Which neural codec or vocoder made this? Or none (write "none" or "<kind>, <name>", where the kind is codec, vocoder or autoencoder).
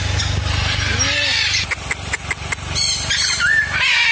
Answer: none